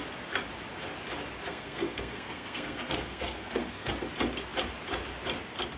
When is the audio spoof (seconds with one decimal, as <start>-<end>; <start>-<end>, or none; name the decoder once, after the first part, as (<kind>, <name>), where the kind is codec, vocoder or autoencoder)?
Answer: 1.5-3.9 (codec, SNAC)